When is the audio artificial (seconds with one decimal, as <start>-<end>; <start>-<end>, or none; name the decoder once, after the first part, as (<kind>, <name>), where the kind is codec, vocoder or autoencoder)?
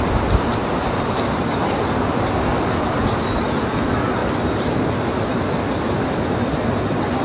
0.6-2.2 (vocoder, BigVGAN v2)